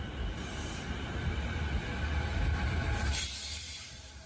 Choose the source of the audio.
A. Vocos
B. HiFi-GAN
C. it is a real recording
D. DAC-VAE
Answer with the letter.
C